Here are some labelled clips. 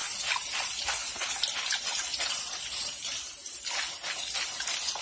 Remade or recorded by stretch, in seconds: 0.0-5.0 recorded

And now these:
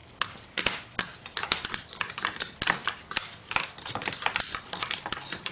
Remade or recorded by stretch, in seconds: 0.0-2.8 recorded; 2.8-5.1 remade; 5.1-5.5 recorded